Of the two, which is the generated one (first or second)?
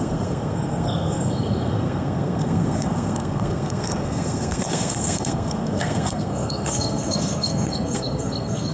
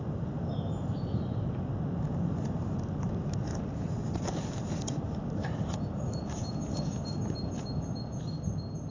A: first